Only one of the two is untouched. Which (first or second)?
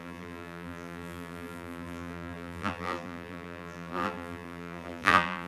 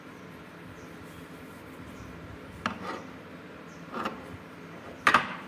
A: second